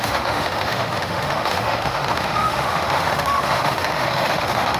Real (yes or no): no